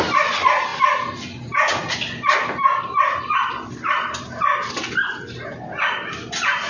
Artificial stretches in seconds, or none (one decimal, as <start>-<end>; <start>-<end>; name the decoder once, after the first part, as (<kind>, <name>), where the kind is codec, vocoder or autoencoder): none